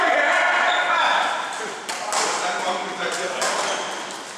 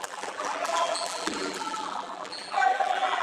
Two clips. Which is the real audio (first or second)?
first